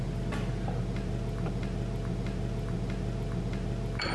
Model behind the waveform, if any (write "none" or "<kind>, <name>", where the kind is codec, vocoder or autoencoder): none